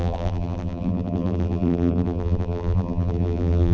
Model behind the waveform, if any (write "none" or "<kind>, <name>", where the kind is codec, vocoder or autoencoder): vocoder, BigVGAN v2